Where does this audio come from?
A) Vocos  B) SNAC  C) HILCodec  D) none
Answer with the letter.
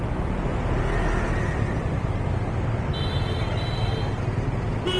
D